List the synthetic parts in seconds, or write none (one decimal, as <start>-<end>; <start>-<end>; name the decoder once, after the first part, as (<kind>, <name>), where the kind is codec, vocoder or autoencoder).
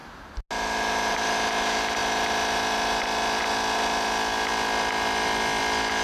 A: none